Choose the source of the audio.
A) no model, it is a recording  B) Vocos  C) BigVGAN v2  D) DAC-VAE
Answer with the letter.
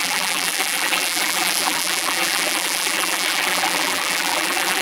C